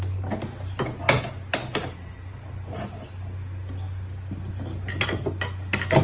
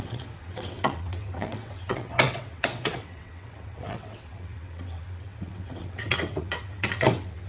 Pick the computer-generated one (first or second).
second